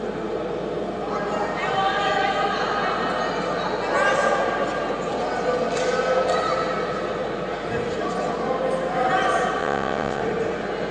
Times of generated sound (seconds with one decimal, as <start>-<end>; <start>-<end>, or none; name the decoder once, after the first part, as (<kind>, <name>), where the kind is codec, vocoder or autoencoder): 9.6-10.2 (vocoder, WaveNeXt)